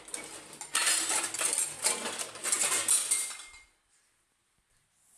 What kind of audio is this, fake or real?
real